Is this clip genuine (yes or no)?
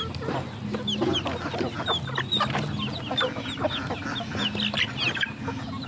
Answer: yes